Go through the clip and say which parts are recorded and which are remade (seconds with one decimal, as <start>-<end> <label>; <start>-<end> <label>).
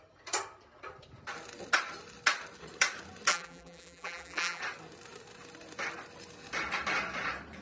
0.0-3.3 recorded; 3.3-4.6 remade; 4.6-7.6 recorded